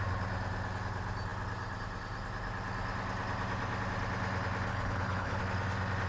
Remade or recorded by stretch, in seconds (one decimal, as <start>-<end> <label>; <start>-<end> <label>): 0.0-4.7 recorded; 4.7-5.4 remade; 5.4-6.1 recorded